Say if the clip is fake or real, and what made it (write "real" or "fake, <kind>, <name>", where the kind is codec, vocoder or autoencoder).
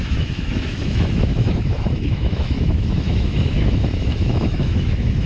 fake, autoencoder, DAC-VAE